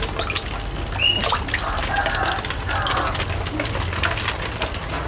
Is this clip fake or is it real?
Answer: real